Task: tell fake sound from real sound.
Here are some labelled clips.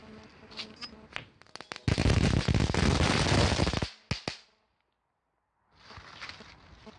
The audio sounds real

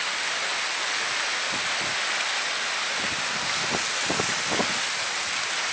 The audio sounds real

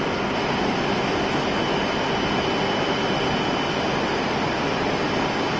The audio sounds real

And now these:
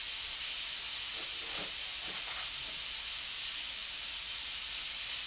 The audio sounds real